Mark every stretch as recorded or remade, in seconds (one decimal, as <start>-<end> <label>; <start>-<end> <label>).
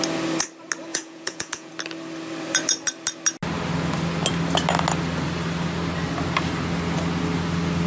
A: 0.0-0.9 recorded; 0.9-1.7 remade; 1.7-7.9 recorded